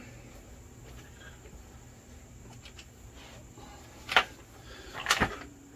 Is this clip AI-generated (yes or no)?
yes